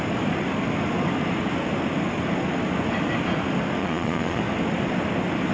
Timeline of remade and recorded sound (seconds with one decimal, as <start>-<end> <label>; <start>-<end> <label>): 0.0-3.8 recorded; 3.8-4.4 remade; 4.4-5.5 recorded